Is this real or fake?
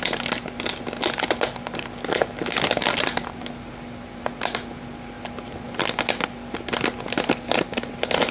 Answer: real